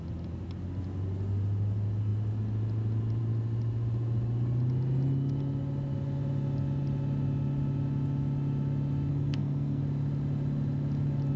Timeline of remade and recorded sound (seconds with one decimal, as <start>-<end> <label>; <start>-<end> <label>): 0.0-9.1 recorded; 9.1-9.8 remade; 9.8-11.4 recorded